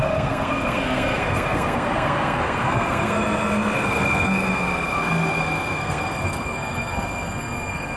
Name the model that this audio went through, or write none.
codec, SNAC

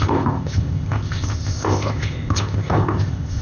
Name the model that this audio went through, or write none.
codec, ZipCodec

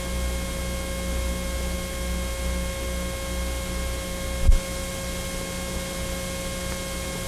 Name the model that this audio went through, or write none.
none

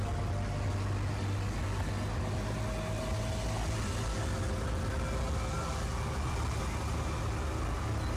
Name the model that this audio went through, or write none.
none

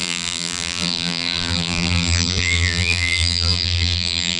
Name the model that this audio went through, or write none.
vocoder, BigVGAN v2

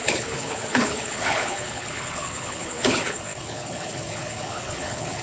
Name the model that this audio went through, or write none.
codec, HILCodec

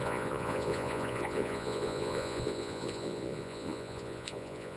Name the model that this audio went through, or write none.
vocoder, Vocos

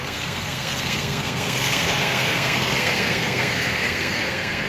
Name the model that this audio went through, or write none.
codec, SNAC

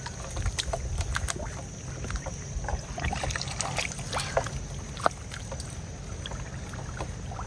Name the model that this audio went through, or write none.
none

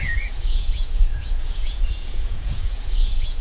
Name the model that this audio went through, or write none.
vocoder, Vocos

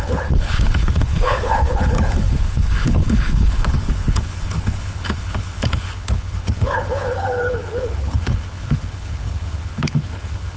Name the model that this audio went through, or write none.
codec, HILCodec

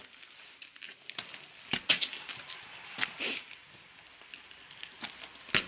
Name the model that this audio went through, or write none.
none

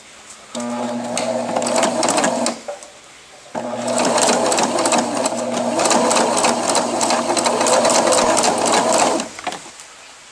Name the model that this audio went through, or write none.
none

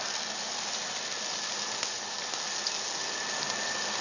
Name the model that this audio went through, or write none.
none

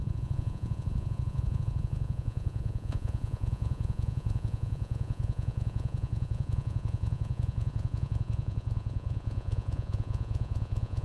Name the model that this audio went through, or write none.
vocoder, Vocos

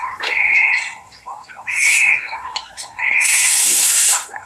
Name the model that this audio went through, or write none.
codec, SNAC